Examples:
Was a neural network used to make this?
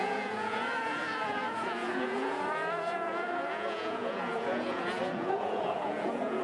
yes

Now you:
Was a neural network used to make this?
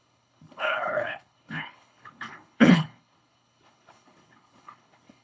yes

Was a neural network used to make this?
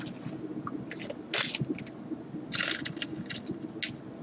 no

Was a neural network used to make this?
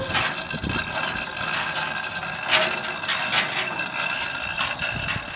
no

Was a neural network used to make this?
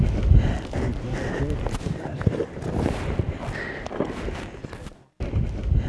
no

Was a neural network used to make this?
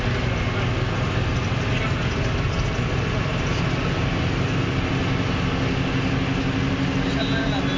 no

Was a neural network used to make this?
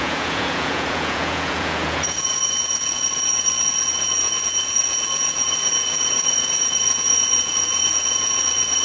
yes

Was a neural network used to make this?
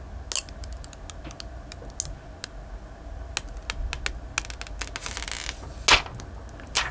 no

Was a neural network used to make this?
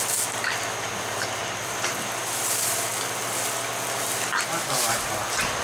no